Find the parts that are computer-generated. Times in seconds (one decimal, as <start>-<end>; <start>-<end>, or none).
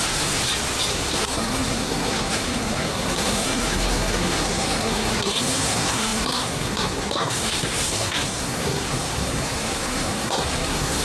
0.0-0.4; 0.9-11.0